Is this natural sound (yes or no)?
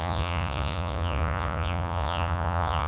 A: no